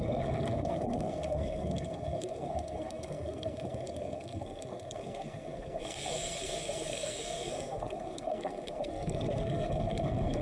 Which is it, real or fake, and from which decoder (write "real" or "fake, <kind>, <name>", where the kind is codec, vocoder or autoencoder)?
fake, codec, SNAC